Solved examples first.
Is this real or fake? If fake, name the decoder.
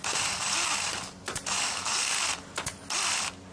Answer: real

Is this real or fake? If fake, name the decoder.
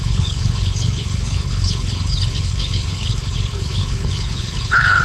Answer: fake, codec, HILCodec